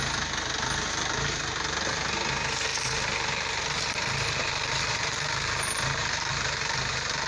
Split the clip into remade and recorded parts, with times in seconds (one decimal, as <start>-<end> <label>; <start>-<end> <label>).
0.0-2.7 recorded; 2.7-7.3 remade